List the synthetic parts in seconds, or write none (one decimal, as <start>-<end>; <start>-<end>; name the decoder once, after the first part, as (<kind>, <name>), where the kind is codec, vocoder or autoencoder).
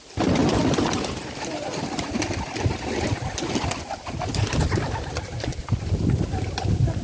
0.4-4.6 (vocoder, BigVGAN v2); 5.6-6.6